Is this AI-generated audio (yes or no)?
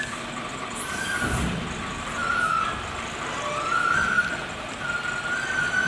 no